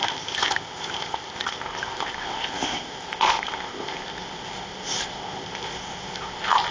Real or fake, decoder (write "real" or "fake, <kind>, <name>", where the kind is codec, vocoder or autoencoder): fake, codec, ZipCodec